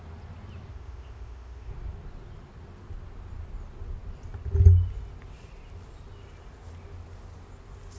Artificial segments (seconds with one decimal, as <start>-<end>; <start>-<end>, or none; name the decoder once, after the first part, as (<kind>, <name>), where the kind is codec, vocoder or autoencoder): 0.7-1.7 (codec, ZipCodec)